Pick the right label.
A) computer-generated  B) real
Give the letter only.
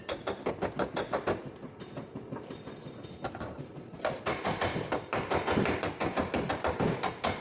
B